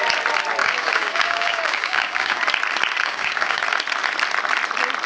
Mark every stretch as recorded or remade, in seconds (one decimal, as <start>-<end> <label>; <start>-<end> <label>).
0.0-0.6 recorded; 0.6-2.4 remade; 2.4-3.0 recorded; 3.0-3.6 remade; 3.6-5.1 recorded